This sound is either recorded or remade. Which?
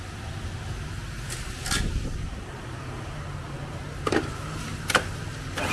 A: recorded